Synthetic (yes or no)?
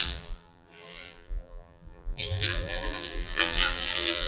yes